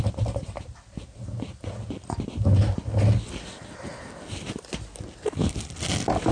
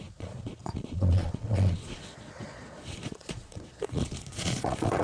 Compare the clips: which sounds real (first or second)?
first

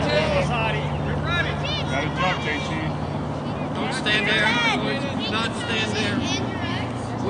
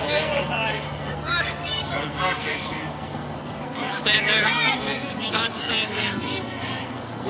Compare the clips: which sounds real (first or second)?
first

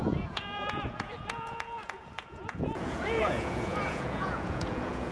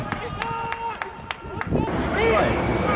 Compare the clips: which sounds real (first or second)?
second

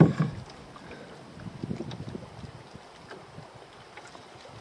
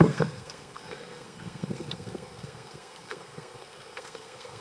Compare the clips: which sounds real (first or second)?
first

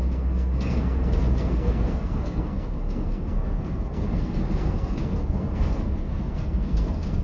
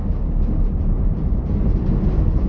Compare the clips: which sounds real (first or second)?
second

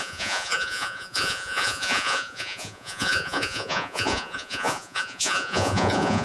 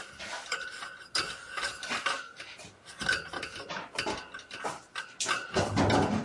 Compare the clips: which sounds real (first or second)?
second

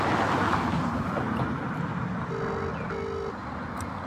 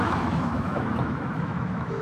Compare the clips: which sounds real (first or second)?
first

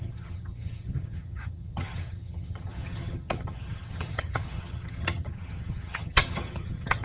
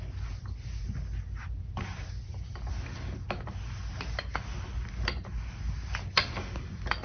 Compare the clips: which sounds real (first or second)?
second